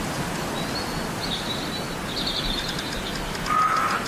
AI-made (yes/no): no